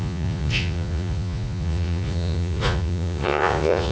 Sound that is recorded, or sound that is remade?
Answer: remade